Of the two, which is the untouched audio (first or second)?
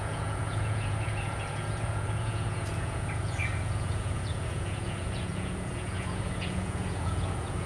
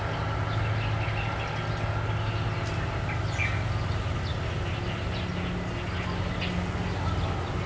second